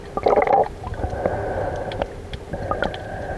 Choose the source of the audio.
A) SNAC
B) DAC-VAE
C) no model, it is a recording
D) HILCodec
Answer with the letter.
C